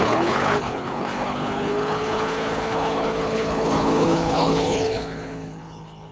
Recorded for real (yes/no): no